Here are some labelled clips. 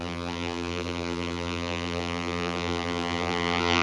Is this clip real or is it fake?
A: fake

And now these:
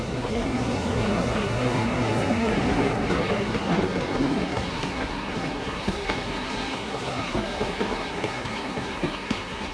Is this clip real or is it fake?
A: fake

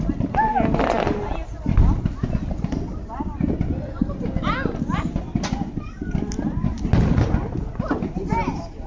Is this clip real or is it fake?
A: real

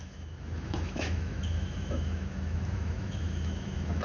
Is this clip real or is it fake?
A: fake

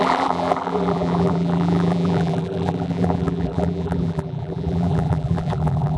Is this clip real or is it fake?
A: fake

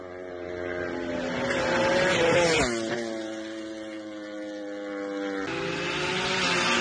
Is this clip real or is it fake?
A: real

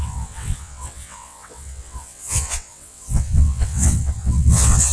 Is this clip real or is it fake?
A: fake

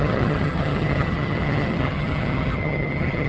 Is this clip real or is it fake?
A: fake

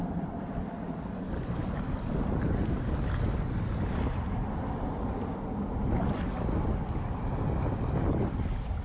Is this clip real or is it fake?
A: real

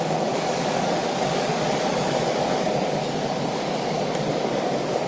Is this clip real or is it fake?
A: fake